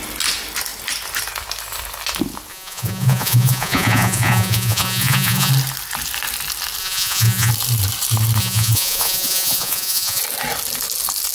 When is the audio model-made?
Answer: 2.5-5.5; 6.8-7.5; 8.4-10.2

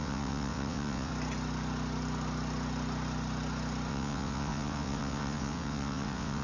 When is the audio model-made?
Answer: 0.0-1.1; 3.9-6.4

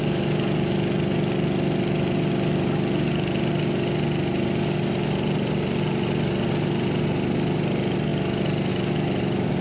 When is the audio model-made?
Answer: none

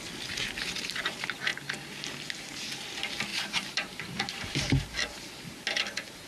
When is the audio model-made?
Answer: 3.3-5.4

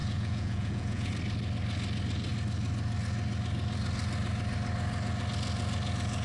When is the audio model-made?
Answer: 0.0-1.1

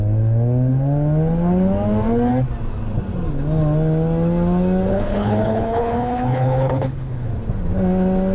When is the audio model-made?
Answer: 4.9-7.3